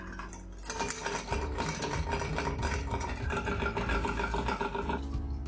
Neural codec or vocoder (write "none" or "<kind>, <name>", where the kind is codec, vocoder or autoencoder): none